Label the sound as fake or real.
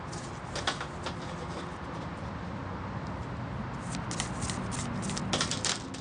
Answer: real